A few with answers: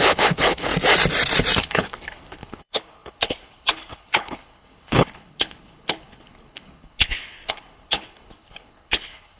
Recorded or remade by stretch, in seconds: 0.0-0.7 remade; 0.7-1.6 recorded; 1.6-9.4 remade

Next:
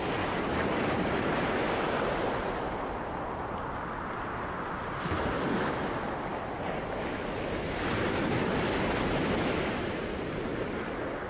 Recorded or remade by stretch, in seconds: 0.0-11.3 recorded